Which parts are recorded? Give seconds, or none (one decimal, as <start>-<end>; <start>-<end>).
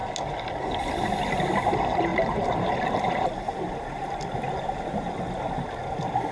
0.0-2.1; 5.2-6.3